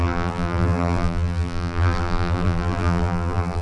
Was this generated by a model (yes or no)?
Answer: yes